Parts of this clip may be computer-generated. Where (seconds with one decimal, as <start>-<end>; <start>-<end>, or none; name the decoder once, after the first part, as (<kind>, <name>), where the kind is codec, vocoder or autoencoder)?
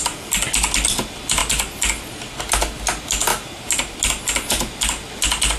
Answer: 3.3-4.1 (vocoder, BigVGAN v2)